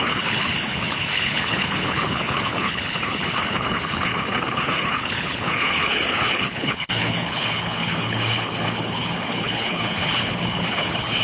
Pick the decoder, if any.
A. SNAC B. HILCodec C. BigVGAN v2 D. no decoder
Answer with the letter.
B